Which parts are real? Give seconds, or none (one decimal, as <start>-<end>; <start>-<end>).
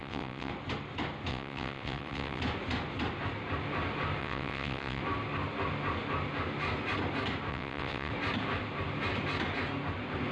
0.5-1.3; 2.4-4.2; 5.0-7.5; 8.1-10.3